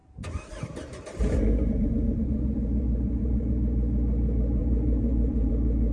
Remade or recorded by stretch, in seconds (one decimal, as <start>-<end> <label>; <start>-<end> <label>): 0.0-3.5 remade; 3.5-4.6 recorded; 4.6-5.5 remade; 5.5-5.9 recorded